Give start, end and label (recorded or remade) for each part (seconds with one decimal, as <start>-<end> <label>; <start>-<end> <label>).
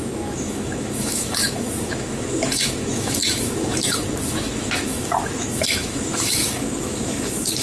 0.0-7.6 remade